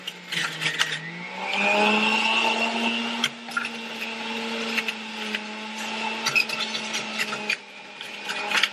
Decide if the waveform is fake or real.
real